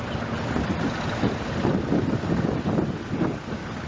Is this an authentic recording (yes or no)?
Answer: yes